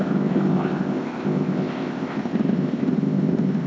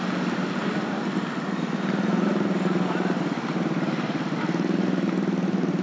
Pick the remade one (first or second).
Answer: first